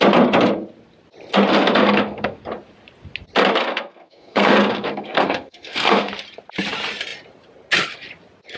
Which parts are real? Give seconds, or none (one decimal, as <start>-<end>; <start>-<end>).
0.0-1.5; 2.4-3.6; 6.1-8.6